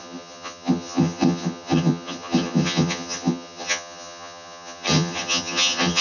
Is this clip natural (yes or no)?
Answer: no